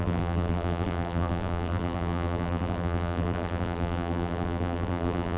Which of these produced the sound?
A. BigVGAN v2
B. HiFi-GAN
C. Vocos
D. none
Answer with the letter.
A